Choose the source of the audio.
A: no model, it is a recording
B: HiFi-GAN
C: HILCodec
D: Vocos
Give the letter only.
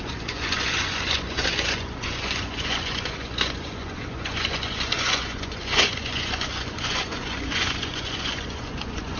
D